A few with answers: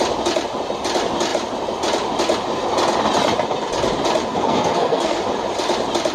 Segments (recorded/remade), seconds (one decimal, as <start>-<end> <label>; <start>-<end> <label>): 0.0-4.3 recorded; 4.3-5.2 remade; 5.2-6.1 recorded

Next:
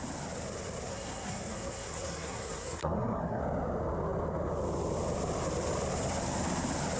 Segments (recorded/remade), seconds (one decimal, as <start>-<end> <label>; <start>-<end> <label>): 0.0-0.9 recorded; 0.9-3.4 remade; 3.4-7.0 recorded

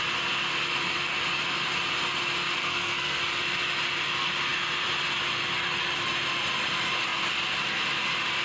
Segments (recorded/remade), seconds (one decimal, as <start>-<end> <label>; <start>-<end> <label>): 0.0-2.6 recorded; 2.6-3.2 remade; 3.2-8.4 recorded

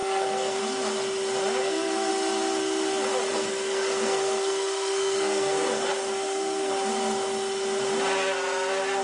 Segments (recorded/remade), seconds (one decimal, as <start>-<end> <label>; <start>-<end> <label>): 0.0-0.6 remade; 0.6-1.6 recorded; 1.6-2.1 remade; 2.1-3.3 recorded; 3.3-6.7 remade; 6.7-9.0 recorded

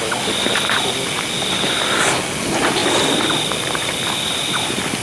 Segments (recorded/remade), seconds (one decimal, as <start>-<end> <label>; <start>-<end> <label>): 0.0-5.0 recorded

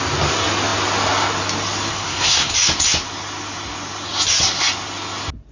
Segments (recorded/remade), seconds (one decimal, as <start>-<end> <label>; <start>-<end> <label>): 0.0-1.9 recorded; 1.9-2.5 remade; 2.5-5.5 recorded

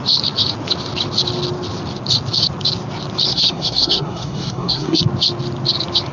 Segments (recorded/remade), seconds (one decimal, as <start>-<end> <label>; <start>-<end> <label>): 0.0-3.3 recorded; 3.3-5.0 remade; 5.0-6.1 recorded